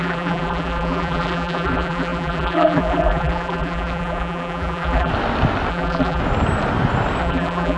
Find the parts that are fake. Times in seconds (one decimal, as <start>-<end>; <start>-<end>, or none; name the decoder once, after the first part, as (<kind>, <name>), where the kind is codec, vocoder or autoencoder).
0.0-5.1 (vocoder, BigVGAN v2); 5.7-6.2; 7.2-7.8